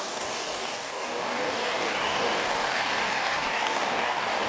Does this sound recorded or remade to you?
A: remade